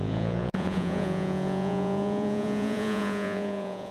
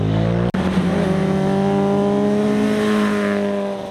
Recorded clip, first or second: second